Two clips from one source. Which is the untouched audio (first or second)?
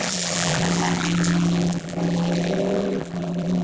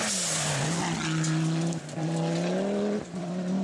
second